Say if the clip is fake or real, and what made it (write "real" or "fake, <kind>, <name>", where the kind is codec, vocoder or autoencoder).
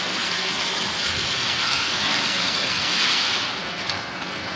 fake, codec, SNAC